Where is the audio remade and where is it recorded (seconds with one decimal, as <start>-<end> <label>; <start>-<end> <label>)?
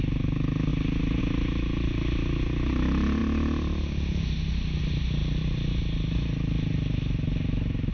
0.0-7.9 recorded